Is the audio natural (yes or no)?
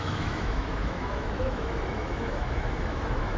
no